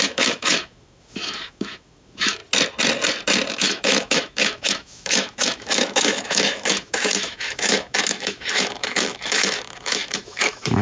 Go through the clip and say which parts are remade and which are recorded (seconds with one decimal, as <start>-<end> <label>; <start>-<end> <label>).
0.0-2.4 remade; 2.4-3.5 recorded; 3.5-10.8 remade

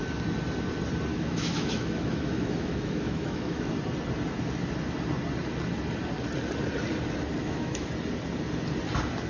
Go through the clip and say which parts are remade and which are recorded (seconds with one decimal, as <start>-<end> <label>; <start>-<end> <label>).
0.0-1.1 recorded; 1.1-3.7 remade; 3.7-7.4 recorded; 7.4-7.9 remade; 7.9-9.3 recorded